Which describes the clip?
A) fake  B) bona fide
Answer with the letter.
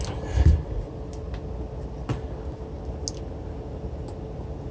B